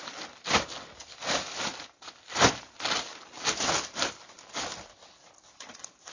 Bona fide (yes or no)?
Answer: yes